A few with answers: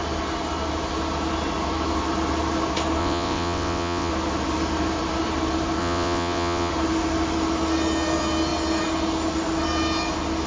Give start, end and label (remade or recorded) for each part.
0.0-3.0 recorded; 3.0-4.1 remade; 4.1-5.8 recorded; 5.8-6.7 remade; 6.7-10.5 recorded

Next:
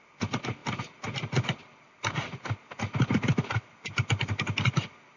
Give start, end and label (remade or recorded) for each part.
0.0-5.2 recorded

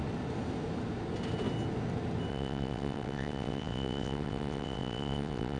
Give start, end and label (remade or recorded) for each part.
0.0-2.3 recorded; 2.3-5.6 remade

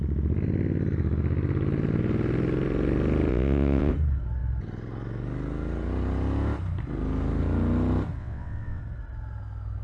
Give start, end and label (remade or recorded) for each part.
0.0-3.3 recorded; 3.3-3.9 remade; 3.9-8.2 recorded; 8.2-8.8 remade; 8.8-9.8 recorded